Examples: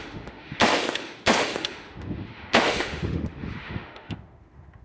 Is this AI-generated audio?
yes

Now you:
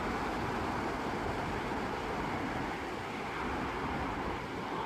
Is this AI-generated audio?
no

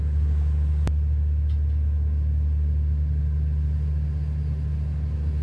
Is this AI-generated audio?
no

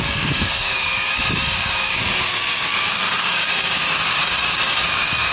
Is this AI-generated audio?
yes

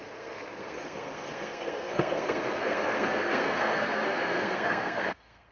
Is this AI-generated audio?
yes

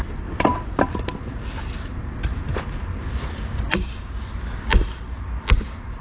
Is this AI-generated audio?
no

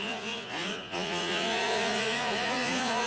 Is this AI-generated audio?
yes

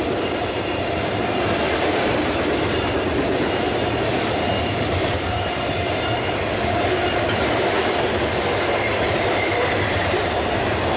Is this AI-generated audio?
no